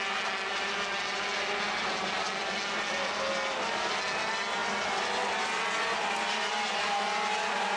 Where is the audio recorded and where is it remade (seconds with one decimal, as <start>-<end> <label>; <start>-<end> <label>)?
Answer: 0.0-7.8 recorded